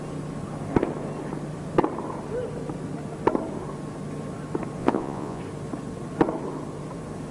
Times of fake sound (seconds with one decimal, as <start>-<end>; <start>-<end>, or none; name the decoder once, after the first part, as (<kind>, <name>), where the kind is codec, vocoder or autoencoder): 4.8-5.4 (vocoder, Vocos)